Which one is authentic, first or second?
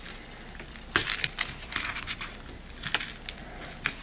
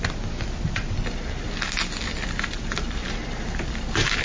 first